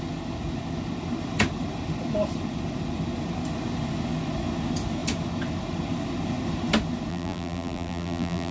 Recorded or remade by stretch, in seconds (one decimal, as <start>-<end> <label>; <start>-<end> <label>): 0.0-7.1 recorded; 7.1-8.5 remade